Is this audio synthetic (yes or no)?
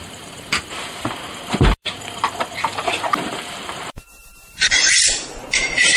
yes